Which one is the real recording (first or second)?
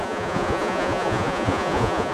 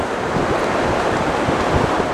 second